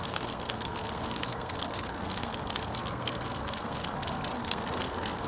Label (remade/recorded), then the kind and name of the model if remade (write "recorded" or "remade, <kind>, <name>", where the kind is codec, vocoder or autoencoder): remade, codec, SNAC